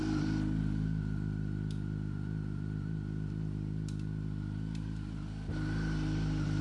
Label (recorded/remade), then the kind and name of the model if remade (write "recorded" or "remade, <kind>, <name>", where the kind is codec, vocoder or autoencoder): recorded